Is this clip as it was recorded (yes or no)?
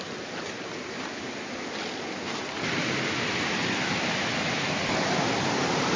yes